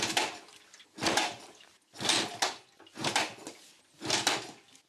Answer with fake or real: real